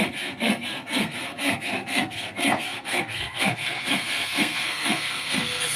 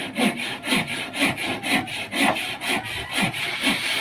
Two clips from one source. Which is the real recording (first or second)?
second